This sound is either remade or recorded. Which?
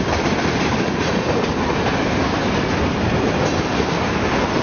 recorded